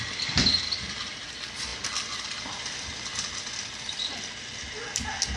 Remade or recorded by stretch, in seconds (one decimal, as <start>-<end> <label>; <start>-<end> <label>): 0.0-5.4 recorded